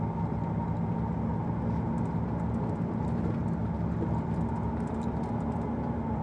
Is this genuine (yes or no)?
yes